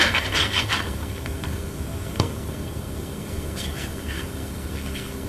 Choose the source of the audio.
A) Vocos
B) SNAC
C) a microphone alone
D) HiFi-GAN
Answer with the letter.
B